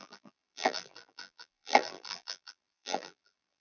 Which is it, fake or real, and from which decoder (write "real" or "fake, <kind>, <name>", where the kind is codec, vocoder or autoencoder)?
fake, vocoder, BigVGAN v2